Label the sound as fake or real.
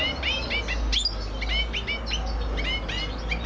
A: real